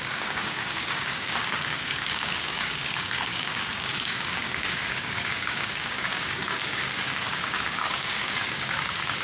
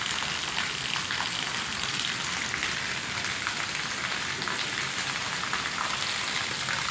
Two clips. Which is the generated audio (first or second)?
first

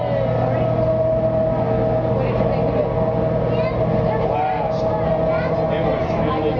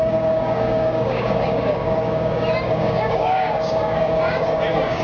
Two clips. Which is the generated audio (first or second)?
second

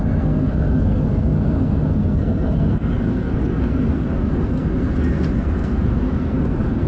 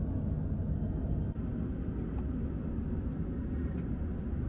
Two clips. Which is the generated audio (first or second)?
first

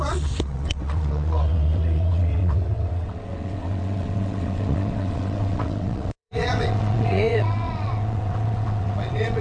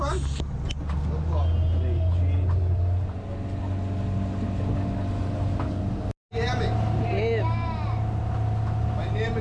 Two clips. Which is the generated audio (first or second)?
first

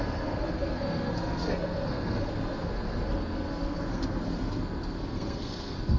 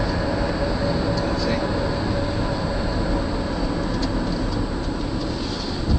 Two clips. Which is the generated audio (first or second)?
first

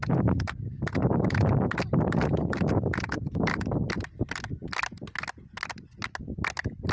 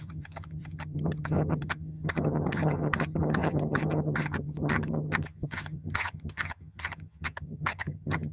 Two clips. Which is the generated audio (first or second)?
second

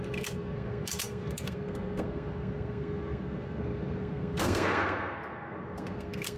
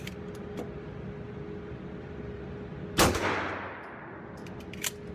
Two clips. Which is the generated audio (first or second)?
first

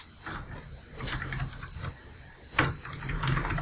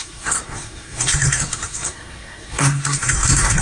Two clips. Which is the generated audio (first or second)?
second